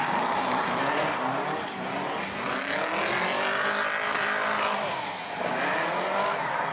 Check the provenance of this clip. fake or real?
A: real